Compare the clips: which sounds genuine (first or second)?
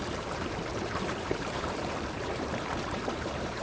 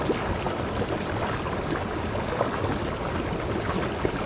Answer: second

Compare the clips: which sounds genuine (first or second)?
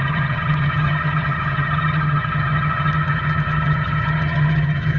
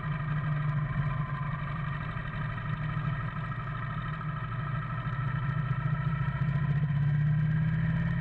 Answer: second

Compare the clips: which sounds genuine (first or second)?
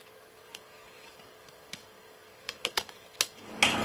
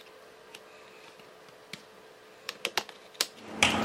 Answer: second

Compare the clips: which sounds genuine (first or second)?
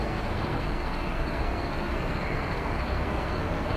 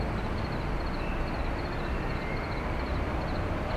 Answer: second